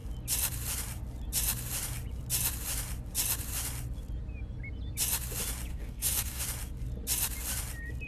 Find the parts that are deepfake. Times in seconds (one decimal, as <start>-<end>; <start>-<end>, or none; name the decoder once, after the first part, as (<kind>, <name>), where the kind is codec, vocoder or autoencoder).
5.7-6.4 (codec, DAC)